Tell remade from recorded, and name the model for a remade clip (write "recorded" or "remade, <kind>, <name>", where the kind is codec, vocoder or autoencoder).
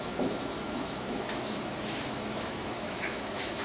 remade, autoencoder, DAC-VAE